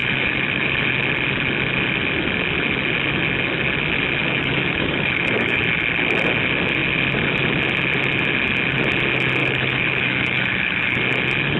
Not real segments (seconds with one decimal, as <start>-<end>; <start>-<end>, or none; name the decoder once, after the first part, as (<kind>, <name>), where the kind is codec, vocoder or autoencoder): 0.0-0.9 (autoencoder, DAC-VAE); 4.2-5.6; 9.4-11.0